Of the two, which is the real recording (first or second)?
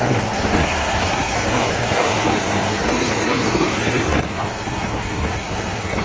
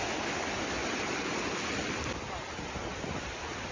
second